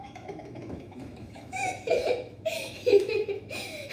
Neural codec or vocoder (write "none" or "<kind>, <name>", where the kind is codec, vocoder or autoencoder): autoencoder, DAC-VAE